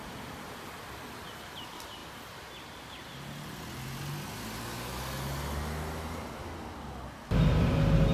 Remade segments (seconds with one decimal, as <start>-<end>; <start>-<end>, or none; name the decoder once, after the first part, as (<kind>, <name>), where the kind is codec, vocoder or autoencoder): none